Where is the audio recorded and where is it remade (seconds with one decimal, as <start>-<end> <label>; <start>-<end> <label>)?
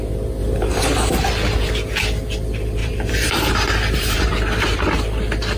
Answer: 0.0-0.4 recorded; 0.4-1.1 remade; 1.1-2.8 recorded; 2.8-4.8 remade; 4.8-5.6 recorded